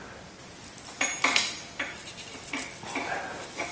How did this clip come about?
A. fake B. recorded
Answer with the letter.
B